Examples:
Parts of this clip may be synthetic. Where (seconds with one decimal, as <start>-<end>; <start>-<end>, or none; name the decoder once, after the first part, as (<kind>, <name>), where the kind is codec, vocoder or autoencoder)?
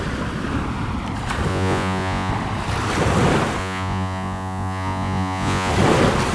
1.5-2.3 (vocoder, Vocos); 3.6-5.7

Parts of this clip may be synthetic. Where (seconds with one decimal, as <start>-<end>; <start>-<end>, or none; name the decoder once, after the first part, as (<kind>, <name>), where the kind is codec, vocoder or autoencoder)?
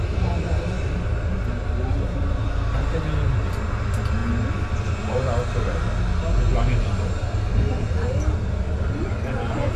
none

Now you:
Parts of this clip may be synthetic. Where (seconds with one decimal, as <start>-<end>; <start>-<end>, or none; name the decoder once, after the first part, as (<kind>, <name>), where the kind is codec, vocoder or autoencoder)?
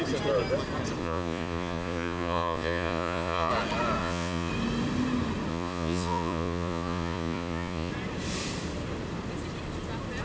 1.0-3.5 (vocoder, Vocos); 4.0-4.5; 5.5-7.9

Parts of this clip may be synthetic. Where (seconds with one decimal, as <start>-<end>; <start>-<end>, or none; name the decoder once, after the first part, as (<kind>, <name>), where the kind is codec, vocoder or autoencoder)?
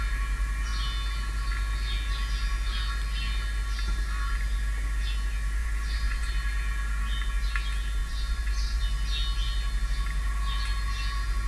5.6-6.3 (vocoder, Vocos); 8.0-8.8